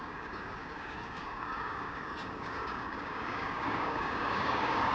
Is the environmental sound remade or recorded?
remade